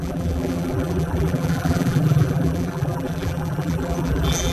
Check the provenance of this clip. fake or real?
fake